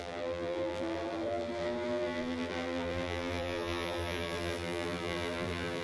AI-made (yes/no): yes